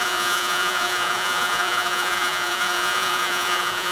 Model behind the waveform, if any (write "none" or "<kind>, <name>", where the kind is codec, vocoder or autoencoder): vocoder, Vocos